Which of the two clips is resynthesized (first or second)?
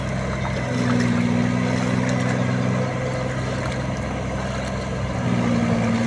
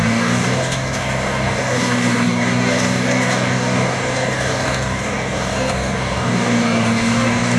second